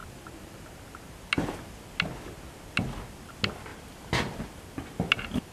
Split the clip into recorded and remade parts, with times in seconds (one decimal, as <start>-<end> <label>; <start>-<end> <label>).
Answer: 0.0-3.7 recorded; 3.7-4.4 remade; 4.4-5.5 recorded

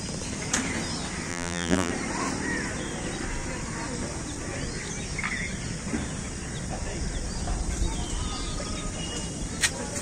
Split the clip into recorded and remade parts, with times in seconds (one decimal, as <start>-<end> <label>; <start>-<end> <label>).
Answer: 0.0-1.3 recorded; 1.3-1.9 remade; 1.9-10.0 recorded